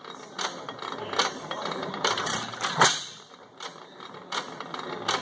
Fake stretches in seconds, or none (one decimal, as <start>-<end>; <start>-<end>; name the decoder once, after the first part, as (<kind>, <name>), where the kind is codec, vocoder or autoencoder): 1.2-4.1 (vocoder, BigVGAN v2)